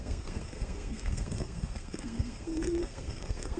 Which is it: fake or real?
fake